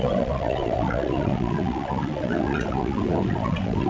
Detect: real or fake fake